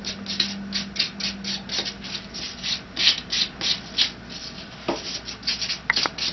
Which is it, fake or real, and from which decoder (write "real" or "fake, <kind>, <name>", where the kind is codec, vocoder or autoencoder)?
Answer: real